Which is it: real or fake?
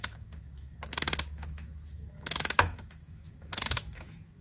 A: fake